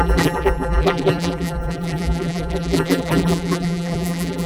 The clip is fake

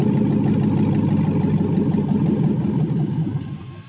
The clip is real